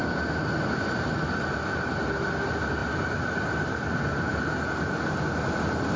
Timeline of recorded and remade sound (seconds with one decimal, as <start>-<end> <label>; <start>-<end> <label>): 0.0-2.8 recorded; 2.8-4.4 remade; 4.4-6.0 recorded